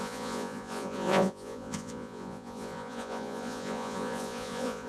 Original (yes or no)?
no